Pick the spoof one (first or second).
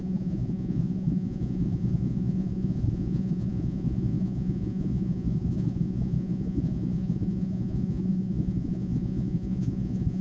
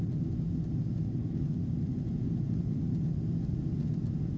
first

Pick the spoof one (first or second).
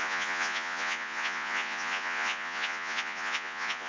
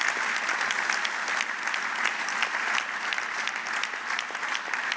first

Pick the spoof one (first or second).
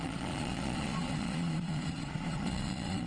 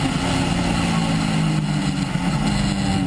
first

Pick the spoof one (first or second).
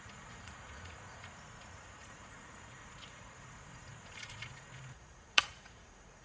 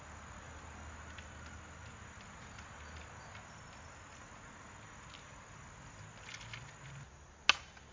first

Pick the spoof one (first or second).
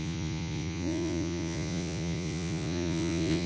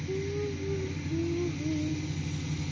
first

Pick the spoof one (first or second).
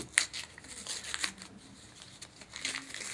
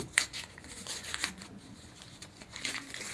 second